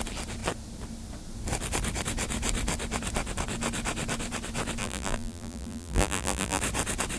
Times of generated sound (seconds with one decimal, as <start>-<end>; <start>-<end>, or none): 4.8-6.6